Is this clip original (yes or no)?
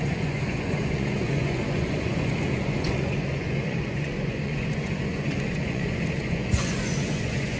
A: no